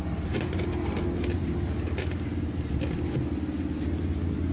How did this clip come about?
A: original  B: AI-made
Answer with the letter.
B